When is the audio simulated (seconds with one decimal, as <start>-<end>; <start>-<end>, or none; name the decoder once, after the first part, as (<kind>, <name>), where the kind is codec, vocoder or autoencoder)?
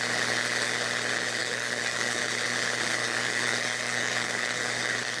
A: 1.4-2.2 (codec, DAC); 3.0-5.2